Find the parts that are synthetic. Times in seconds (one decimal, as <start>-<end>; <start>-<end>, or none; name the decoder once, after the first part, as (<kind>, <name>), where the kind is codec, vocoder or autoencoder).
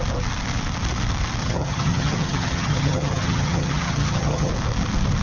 1.4-4.5 (vocoder, HiFi-GAN)